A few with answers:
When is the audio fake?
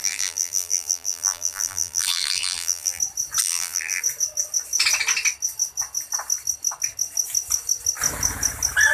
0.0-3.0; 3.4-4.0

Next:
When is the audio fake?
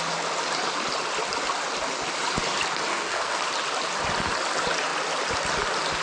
2.9-3.4